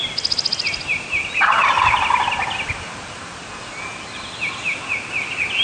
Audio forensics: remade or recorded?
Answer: recorded